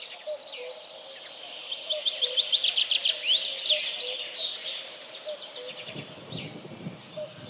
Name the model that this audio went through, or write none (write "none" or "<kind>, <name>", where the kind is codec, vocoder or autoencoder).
none